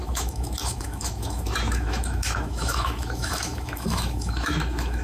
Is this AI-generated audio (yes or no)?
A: yes